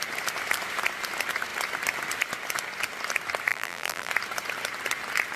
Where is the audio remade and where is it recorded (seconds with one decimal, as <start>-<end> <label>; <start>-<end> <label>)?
0.0-3.5 recorded; 3.5-4.1 remade; 4.1-5.4 recorded